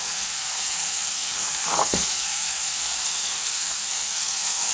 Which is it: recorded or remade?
remade